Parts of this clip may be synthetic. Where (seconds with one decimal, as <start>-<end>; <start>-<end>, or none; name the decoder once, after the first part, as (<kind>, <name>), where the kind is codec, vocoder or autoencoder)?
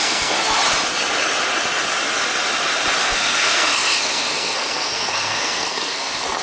0.0-0.6 (codec, SNAC); 3.0-6.4